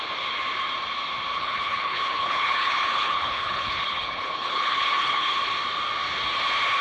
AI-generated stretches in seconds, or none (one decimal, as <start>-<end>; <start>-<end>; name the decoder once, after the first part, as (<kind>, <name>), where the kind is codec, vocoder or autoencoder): 1.3-5.4 (codec, HILCodec)